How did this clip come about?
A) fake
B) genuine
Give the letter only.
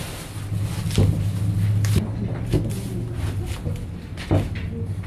B